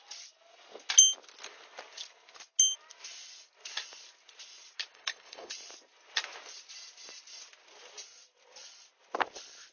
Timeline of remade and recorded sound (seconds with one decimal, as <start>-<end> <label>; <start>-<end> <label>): 0.0-4.9 recorded; 4.9-5.5 remade; 5.5-9.7 recorded